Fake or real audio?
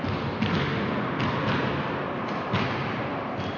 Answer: real